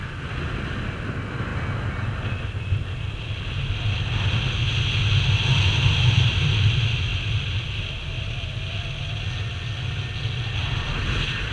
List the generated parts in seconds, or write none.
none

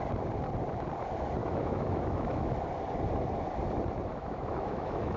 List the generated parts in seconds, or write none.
1.4-2.5 (autoencoder, DAC-VAE); 4.1-5.2